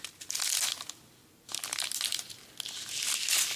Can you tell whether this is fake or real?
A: real